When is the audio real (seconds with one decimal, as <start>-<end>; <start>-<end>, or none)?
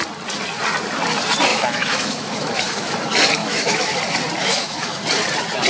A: 0.0-1.5; 2.9-3.4; 4.0-4.4; 5.0-5.7